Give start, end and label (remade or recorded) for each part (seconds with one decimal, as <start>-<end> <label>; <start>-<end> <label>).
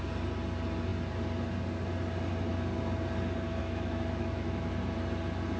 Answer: 0.0-3.6 recorded; 3.6-4.7 remade; 4.7-5.6 recorded